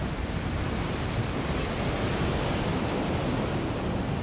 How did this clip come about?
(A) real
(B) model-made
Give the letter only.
A